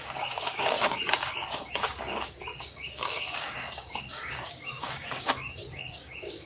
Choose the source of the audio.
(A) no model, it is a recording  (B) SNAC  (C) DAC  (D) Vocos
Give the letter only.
C